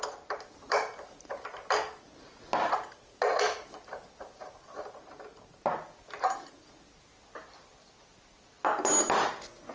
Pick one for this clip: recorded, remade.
recorded